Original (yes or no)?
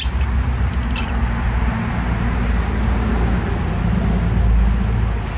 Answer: yes